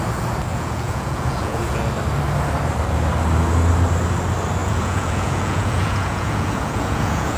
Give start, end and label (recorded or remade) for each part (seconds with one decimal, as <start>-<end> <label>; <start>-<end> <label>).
0.0-0.5 recorded; 0.5-1.6 remade; 1.6-4.6 recorded; 4.6-7.4 remade